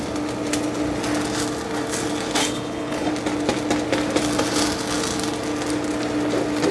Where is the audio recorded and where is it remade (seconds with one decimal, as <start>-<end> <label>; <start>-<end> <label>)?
0.0-2.4 recorded; 2.4-3.1 remade; 3.1-6.7 recorded